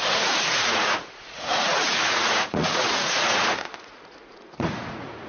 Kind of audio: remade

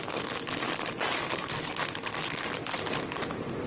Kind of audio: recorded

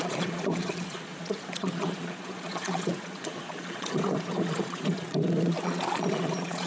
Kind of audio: remade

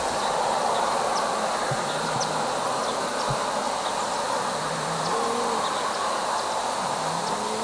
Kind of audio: recorded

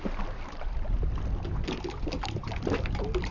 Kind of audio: recorded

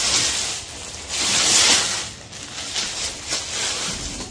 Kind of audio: recorded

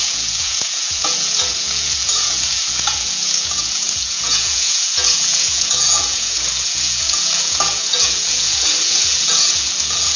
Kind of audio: remade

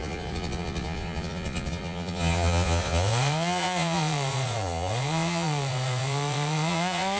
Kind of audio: remade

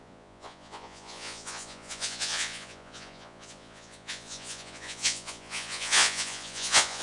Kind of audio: remade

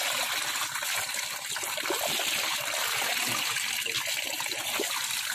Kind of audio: recorded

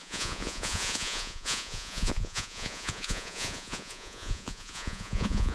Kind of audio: remade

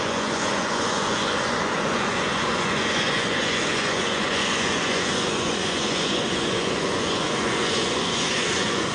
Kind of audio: remade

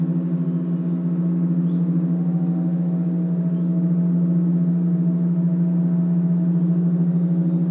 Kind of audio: recorded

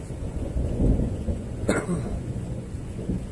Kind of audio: remade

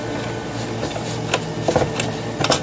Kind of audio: recorded